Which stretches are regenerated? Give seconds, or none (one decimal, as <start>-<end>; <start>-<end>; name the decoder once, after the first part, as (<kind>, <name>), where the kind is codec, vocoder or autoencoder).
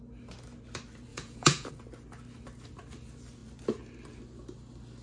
1.1-1.7 (vocoder, Vocos)